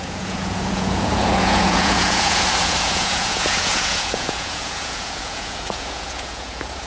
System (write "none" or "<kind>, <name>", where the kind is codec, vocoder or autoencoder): vocoder, Vocos